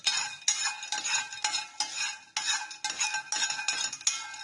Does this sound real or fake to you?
real